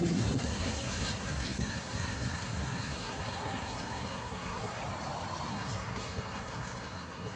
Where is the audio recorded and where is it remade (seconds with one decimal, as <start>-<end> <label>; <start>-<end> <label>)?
0.0-4.8 remade; 4.8-5.5 recorded; 5.5-7.4 remade